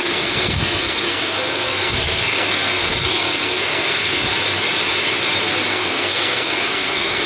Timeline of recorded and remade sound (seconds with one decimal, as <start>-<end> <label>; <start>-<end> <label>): 0.0-4.2 remade; 4.2-5.7 recorded; 5.7-7.3 remade